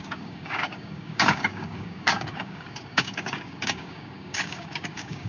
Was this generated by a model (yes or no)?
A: yes